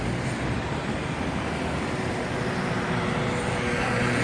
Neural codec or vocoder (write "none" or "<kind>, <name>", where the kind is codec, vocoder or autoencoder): none